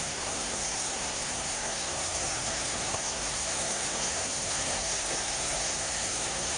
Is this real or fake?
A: fake